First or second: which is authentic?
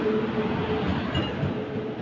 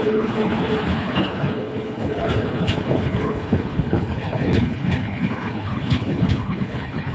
first